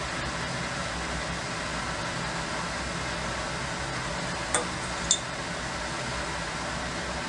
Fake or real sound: real